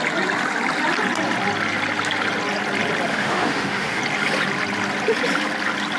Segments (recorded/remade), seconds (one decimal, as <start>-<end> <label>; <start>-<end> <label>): 0.0-3.1 recorded; 3.1-4.0 remade; 4.0-6.0 recorded